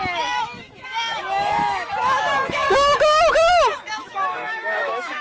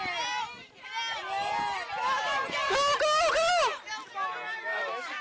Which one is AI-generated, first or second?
first